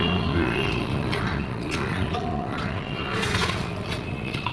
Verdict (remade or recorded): remade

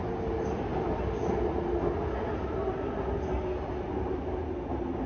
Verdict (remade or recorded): recorded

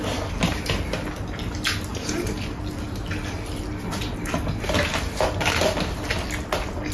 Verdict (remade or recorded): recorded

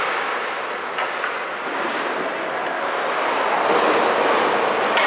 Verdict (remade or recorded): recorded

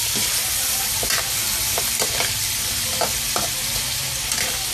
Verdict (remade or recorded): remade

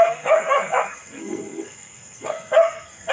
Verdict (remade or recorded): remade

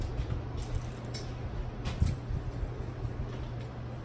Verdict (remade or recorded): recorded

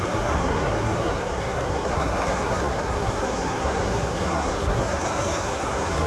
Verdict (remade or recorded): remade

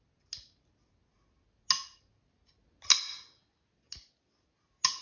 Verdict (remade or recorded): recorded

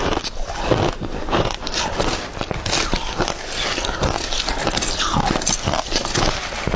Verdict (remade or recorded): recorded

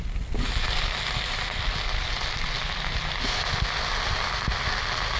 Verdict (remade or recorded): recorded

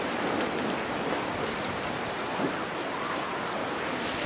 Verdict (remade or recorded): recorded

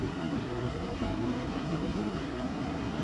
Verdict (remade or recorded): remade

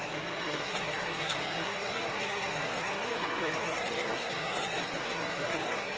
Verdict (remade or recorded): remade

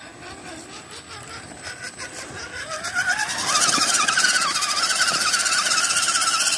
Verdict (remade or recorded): recorded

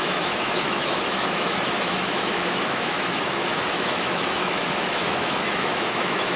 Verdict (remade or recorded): remade